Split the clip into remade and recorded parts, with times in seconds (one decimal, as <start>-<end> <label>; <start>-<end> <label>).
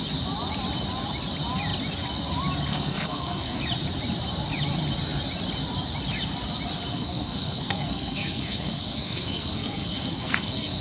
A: 0.0-2.7 recorded; 2.7-3.6 remade; 3.6-6.9 recorded; 6.9-10.8 remade